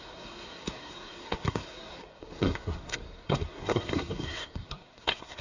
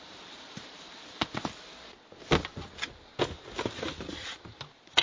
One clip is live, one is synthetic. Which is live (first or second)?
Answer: second